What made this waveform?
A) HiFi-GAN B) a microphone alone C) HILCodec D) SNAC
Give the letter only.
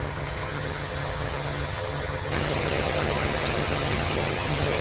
A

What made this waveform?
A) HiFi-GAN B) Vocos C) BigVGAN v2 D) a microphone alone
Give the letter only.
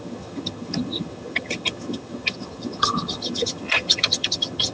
A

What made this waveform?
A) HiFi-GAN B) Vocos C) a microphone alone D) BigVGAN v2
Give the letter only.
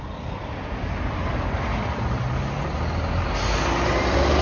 C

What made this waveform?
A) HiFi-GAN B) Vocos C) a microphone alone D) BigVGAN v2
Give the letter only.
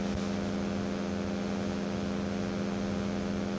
C